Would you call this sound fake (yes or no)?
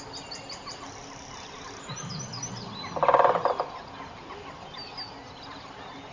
no